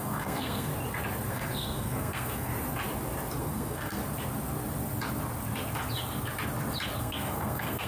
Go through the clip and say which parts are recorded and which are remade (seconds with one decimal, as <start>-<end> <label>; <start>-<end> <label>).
0.0-0.7 remade; 0.7-1.3 recorded; 1.3-2.5 remade; 2.5-3.4 recorded; 3.4-4.0 remade; 4.0-7.0 recorded; 7.0-7.9 remade